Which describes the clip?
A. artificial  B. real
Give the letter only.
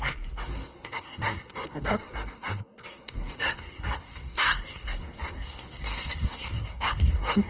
A